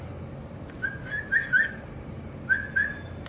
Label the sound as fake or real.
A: real